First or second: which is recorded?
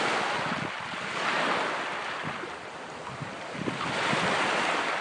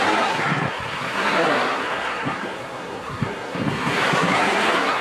first